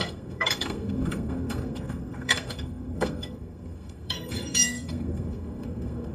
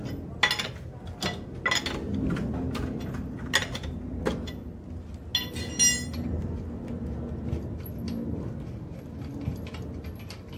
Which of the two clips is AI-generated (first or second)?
first